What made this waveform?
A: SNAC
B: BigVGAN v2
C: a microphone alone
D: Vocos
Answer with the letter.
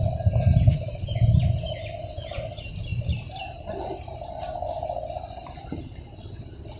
C